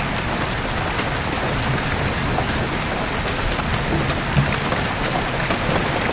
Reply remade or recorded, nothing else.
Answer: recorded